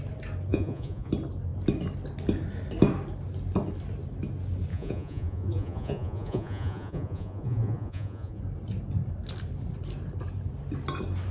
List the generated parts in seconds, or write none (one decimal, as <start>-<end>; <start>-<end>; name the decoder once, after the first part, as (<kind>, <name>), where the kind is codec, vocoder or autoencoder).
0.5-1.1 (vocoder, Vocos); 4.7-8.4